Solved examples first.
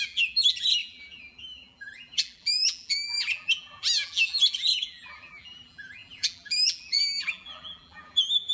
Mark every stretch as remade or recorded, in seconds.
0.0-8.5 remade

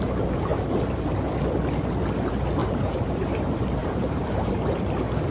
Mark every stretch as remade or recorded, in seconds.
0.0-2.6 recorded; 2.6-3.4 remade; 3.4-3.8 recorded; 3.8-4.5 remade; 4.5-5.3 recorded

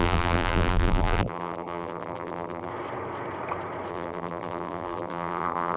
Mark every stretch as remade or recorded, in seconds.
0.0-2.7 remade; 2.7-3.9 recorded; 3.9-5.8 remade

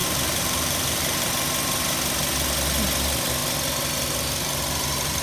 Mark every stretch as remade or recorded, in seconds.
0.0-1.3 remade; 1.3-5.2 recorded